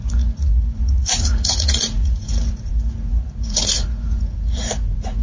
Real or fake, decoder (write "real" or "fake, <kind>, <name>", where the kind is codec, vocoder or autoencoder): fake, vocoder, Vocos